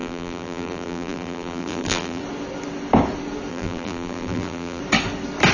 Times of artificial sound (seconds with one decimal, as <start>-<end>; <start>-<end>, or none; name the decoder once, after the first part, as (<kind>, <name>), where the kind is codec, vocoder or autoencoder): 0.0-2.2 (vocoder, BigVGAN v2); 3.5-4.8